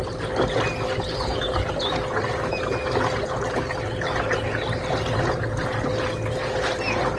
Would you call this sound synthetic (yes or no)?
no